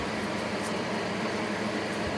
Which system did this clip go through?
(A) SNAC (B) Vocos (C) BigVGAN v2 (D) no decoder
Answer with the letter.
C